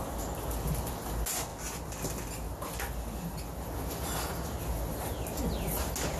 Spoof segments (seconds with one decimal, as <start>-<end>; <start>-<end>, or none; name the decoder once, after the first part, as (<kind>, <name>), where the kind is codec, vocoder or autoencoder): none